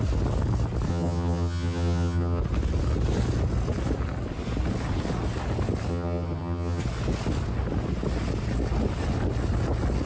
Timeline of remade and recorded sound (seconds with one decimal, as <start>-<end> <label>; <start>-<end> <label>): 0.0-0.9 recorded; 0.9-2.4 remade; 2.4-5.9 recorded; 5.9-6.8 remade; 6.8-10.1 recorded